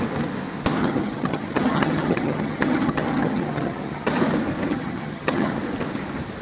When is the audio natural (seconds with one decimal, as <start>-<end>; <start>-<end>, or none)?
0.0-0.8; 4.1-4.7; 5.6-6.4